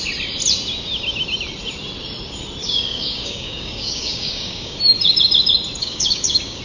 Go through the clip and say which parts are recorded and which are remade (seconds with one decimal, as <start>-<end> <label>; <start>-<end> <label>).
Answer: 0.0-2.6 recorded; 2.6-4.8 remade; 4.8-5.8 recorded; 5.8-6.6 remade